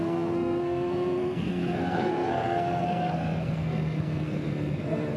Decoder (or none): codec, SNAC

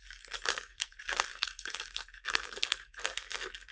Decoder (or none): codec, SNAC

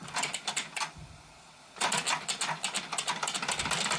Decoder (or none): none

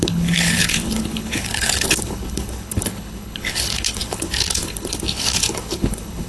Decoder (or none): codec, HILCodec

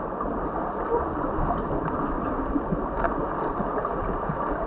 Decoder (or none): none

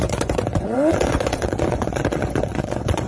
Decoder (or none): vocoder, Vocos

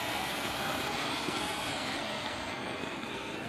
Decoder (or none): codec, SNAC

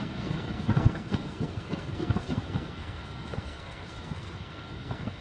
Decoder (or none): codec, SNAC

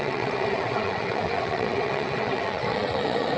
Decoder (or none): vocoder, WaveNeXt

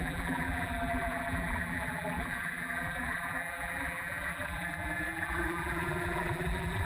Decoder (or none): vocoder, BigVGAN v2